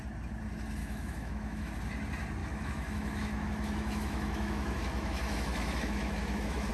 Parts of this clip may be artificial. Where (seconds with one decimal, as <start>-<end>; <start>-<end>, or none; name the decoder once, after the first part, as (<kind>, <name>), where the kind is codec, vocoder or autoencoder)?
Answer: 0.8-1.7 (autoencoder, DAC-VAE); 2.4-6.7